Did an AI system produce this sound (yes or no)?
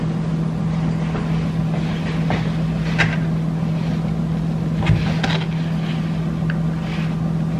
no